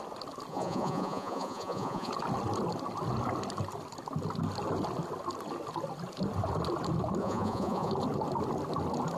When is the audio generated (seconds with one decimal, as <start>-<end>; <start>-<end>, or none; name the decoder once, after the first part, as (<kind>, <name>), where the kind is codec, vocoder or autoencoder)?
0.5-2.1 (vocoder, Vocos); 7.2-7.9